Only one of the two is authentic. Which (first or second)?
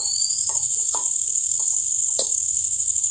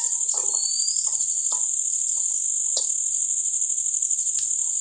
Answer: second